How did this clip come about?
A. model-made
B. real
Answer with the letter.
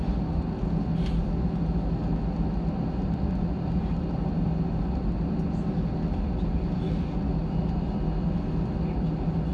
B